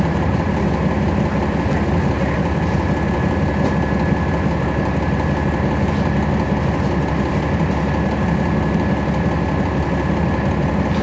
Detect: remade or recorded recorded